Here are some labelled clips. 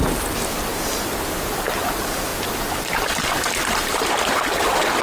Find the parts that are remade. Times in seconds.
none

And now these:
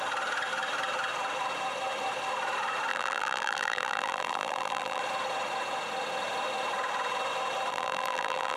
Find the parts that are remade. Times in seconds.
2.9-5.0; 7.7-8.6

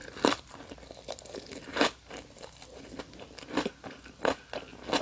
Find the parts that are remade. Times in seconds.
none

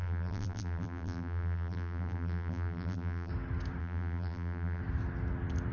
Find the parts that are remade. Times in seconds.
0.0-3.3; 3.8-4.8

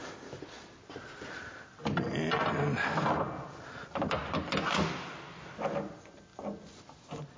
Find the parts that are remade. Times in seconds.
none

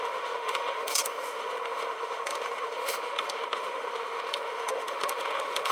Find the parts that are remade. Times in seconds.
0.0-5.7

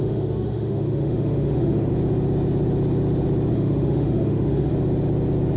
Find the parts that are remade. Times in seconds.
0.0-1.9; 3.5-4.7